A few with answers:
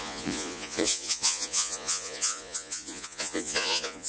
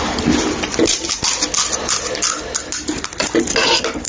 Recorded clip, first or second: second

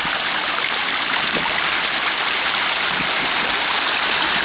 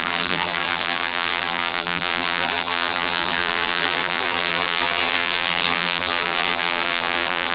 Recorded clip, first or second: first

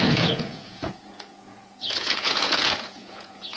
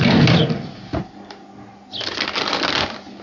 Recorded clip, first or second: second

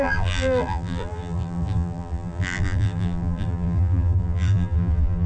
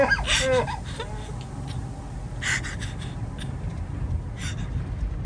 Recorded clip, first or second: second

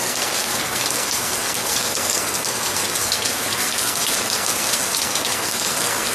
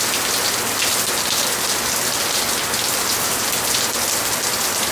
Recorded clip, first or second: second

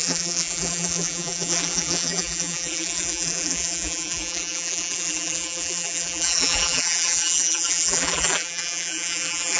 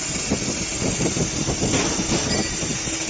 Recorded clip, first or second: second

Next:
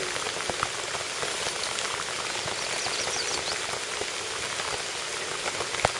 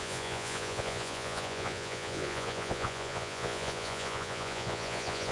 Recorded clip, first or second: first